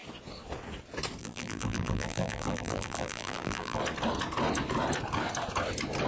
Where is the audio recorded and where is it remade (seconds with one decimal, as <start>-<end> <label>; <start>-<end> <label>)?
0.0-1.2 recorded; 1.2-3.8 remade; 3.8-6.1 recorded

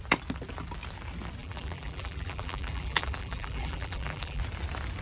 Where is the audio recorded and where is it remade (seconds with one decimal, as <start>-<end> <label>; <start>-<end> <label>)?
0.0-1.4 recorded; 1.4-4.4 remade; 4.4-5.0 recorded